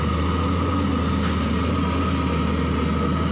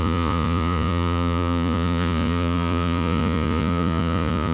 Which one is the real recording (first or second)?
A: first